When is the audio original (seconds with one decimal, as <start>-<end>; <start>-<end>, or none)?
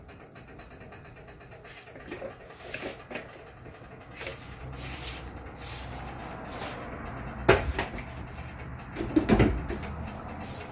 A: 0.0-4.3; 5.1-10.7